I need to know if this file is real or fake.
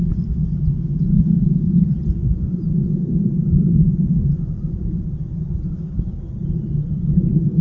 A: fake